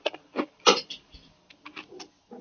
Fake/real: real